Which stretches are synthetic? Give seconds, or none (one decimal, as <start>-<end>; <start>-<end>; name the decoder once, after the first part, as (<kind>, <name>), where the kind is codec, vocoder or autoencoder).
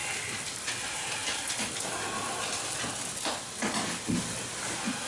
0.0-0.6 (vocoder, BigVGAN v2)